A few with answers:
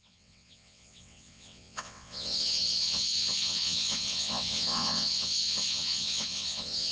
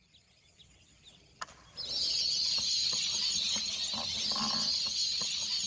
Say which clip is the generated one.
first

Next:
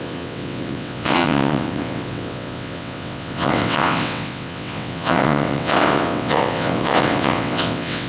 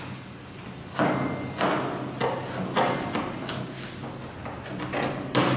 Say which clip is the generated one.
first